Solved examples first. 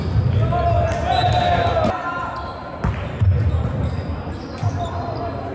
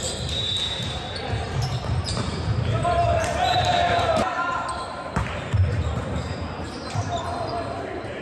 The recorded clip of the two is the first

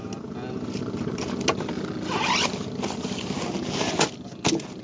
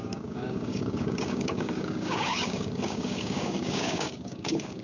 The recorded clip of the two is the first